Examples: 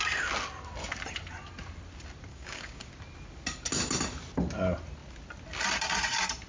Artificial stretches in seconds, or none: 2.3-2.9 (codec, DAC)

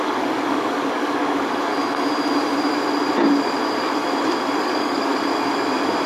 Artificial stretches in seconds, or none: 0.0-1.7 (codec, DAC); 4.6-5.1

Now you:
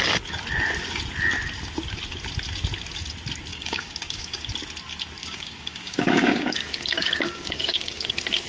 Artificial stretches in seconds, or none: 3.5-4.5 (codec, DAC); 5.2-8.1

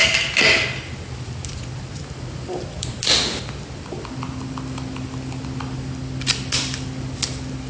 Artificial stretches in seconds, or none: none